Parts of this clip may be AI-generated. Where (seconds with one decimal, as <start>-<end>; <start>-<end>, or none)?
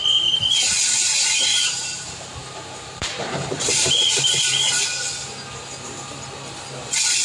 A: 1.5-4.7